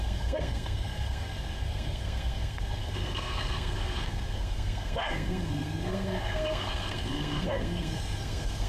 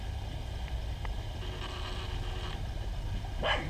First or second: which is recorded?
second